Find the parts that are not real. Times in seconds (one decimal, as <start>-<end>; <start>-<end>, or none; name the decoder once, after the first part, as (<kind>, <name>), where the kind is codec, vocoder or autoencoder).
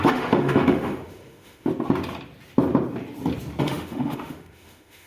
0.0-1.7 (autoencoder, DAC-VAE); 3.6-5.1